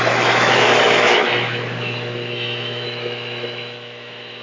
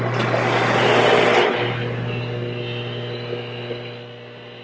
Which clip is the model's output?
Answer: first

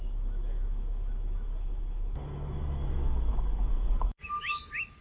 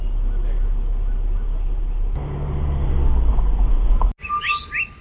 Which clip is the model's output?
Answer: first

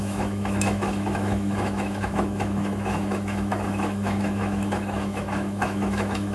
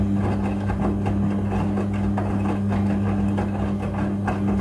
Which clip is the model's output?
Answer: first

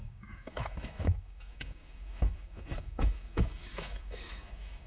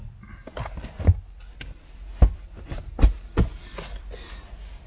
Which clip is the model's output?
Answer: first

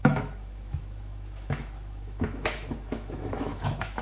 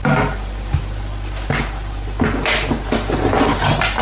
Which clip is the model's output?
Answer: first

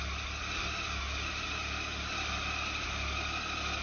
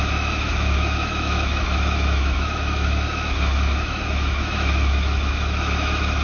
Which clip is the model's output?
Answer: second